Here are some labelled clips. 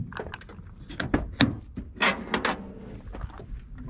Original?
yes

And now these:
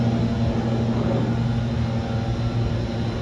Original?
yes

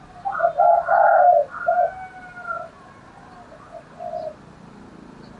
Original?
yes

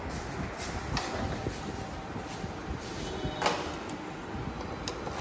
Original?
yes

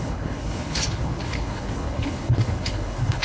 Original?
no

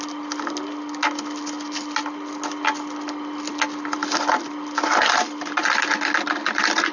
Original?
yes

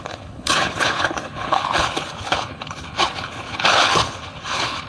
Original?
no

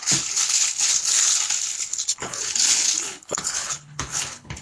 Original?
no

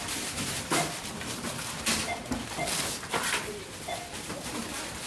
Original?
yes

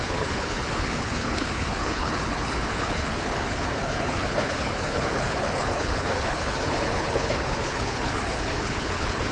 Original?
no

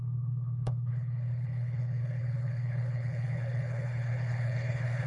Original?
no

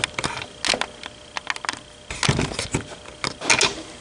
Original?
yes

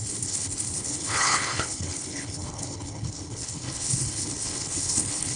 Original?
no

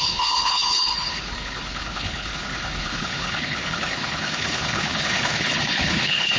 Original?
no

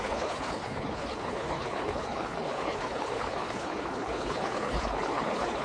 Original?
no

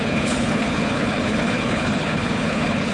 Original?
no